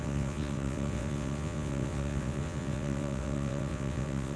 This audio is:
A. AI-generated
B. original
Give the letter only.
A